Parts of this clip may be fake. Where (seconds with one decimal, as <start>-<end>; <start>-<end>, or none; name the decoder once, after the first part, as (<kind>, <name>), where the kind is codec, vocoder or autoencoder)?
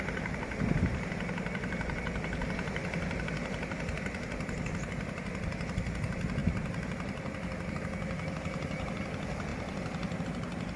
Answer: none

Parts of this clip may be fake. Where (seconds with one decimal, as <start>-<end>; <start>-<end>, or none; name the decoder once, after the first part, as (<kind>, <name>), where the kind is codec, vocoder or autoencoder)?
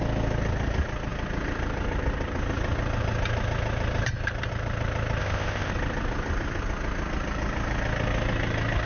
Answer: 5.2-5.7 (codec, ZipCodec)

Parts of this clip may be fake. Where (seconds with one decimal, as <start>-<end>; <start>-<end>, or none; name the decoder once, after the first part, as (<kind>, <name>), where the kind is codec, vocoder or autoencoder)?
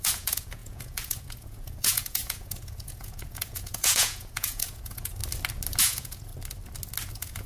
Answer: 0.0-5.2 (vocoder, Vocos); 5.8-6.3; 7.1-7.5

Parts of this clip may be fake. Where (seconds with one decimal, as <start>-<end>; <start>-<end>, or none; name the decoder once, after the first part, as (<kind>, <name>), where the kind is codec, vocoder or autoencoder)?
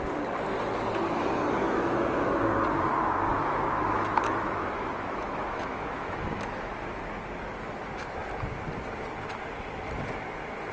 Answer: 1.6-2.4 (autoencoder, DAC-VAE); 3.3-6.7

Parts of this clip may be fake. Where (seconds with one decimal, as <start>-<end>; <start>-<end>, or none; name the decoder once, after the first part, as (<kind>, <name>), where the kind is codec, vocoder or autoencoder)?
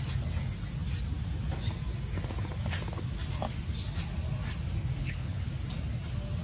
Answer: 5.0-5.5 (codec, HILCodec)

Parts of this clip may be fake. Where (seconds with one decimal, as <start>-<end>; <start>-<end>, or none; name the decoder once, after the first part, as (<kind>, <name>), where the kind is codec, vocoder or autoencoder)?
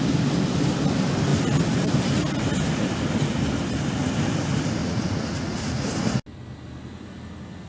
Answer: 4.8-5.9 (vocoder, Vocos)